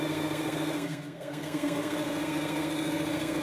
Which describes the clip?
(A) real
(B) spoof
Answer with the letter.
B